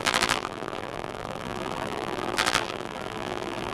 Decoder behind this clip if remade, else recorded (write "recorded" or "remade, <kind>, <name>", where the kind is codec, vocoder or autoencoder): remade, vocoder, BigVGAN v2